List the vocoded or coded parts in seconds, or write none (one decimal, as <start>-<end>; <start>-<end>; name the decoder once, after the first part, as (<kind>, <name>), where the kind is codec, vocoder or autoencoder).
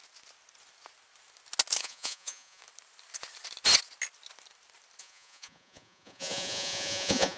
1.8-2.6 (vocoder, Vocos); 5.0-7.4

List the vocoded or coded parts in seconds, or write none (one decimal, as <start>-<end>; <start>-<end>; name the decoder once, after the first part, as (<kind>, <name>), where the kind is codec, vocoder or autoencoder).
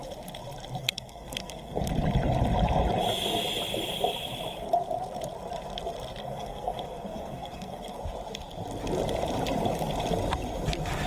0.8-1.8 (codec, SNAC); 6.2-8.0